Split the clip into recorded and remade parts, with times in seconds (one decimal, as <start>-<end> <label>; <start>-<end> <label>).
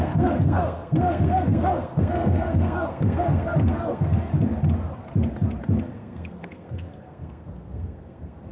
0.0-4.3 remade; 4.3-5.8 recorded; 5.8-8.5 remade